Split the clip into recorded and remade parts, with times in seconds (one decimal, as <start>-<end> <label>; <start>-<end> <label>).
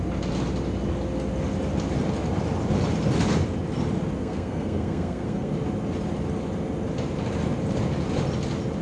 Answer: 0.0-4.2 recorded; 4.2-5.5 remade; 5.5-8.8 recorded